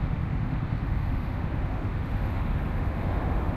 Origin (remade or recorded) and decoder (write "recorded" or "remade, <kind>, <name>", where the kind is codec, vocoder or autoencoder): remade, autoencoder, DAC-VAE